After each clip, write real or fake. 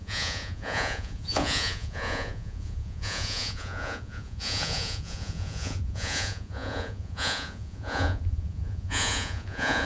fake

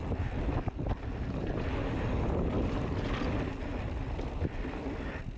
real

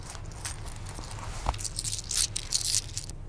real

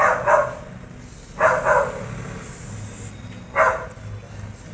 real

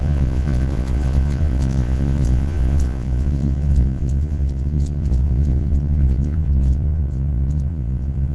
fake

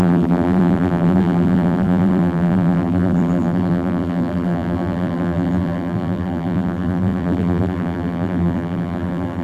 fake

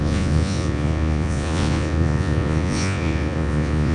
fake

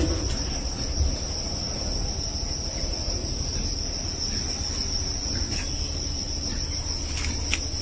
real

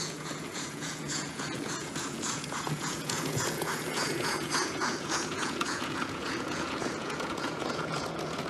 fake